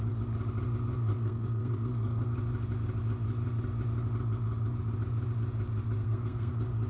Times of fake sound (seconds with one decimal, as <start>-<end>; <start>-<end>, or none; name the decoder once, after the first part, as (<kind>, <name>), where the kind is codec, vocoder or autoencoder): 1.1-2.2 (codec, SNAC); 6.0-6.5